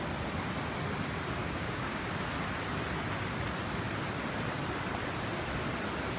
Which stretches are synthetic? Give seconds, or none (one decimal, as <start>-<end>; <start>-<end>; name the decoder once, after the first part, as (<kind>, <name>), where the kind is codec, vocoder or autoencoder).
1.4-2.1 (codec, DAC)